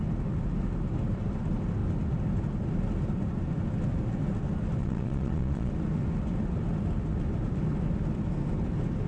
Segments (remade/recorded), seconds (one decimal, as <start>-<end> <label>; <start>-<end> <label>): 0.0-4.8 recorded; 4.8-5.7 remade; 5.7-9.1 recorded